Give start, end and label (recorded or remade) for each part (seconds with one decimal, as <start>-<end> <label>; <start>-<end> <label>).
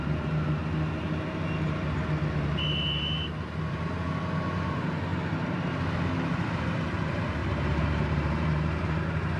0.0-0.6 remade; 0.6-3.7 recorded; 3.7-5.1 remade; 5.1-6.2 recorded; 6.2-9.4 remade